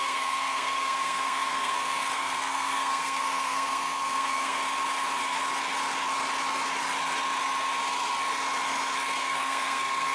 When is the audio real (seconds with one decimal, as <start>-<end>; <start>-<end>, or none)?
4.6-9.2